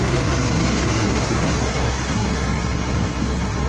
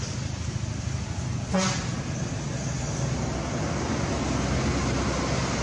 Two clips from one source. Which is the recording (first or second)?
second